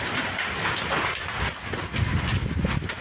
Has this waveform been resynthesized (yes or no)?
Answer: no